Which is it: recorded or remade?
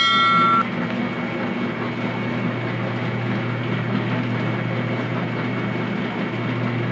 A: recorded